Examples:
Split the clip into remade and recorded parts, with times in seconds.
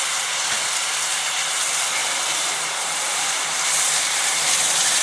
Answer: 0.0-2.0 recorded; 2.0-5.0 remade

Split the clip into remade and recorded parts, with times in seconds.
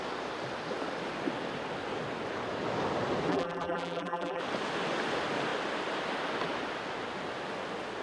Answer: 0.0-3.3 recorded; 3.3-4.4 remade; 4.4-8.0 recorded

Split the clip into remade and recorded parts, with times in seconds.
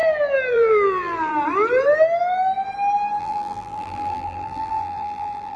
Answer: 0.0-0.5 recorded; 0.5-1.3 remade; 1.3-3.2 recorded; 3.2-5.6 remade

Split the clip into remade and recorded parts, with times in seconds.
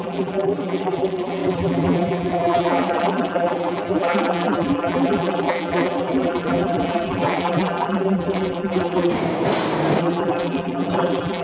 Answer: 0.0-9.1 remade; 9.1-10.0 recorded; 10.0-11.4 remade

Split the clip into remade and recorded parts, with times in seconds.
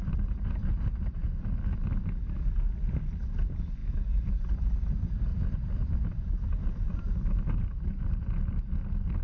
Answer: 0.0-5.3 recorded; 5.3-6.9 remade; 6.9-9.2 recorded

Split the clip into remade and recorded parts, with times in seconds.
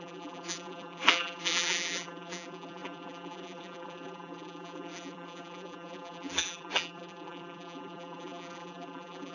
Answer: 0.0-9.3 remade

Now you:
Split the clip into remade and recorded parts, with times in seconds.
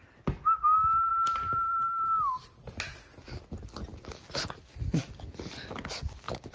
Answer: 0.0-1.1 recorded; 1.1-2.5 remade; 2.5-6.5 recorded